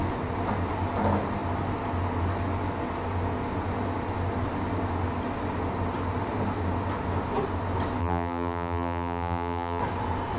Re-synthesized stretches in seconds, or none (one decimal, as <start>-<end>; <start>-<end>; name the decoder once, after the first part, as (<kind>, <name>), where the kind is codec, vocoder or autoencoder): 8.0-9.8 (vocoder, BigVGAN v2)